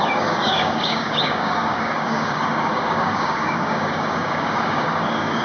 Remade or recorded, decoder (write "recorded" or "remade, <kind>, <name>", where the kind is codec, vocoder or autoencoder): remade, codec, DAC